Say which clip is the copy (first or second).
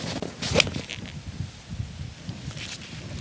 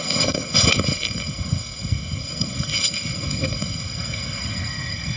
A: second